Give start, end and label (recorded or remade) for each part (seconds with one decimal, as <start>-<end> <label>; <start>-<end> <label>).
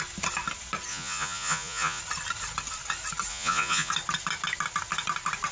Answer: 0.0-0.9 recorded; 0.9-2.0 remade; 2.0-3.3 recorded; 3.3-3.9 remade; 3.9-5.5 recorded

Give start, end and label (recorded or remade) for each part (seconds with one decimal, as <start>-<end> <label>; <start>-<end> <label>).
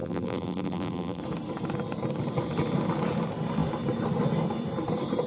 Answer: 0.0-1.2 remade; 1.2-5.3 recorded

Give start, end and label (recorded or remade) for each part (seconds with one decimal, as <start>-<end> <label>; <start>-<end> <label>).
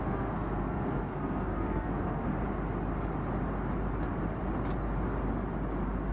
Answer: 0.0-2.3 remade; 2.3-6.1 recorded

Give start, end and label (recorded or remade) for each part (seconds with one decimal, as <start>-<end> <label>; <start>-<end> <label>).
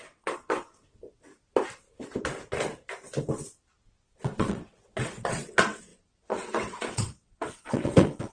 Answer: 0.0-1.3 remade; 1.3-4.1 recorded; 4.1-8.3 remade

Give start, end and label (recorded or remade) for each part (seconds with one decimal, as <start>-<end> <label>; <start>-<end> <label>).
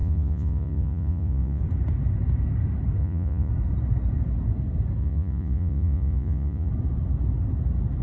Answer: 0.0-1.6 remade; 1.6-3.0 recorded; 3.0-3.5 remade; 3.5-5.0 recorded; 5.0-6.7 remade; 6.7-8.0 recorded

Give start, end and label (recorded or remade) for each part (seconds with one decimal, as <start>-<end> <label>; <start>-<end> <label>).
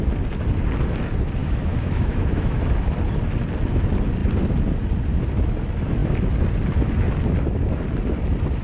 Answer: 0.0-1.4 recorded; 1.4-2.6 remade; 2.6-8.6 recorded